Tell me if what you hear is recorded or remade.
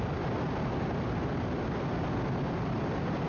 recorded